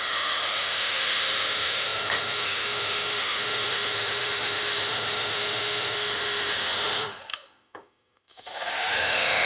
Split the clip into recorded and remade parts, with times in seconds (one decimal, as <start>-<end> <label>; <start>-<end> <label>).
0.0-9.5 remade